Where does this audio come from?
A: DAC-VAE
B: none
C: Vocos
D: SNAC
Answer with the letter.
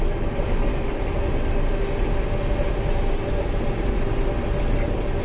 B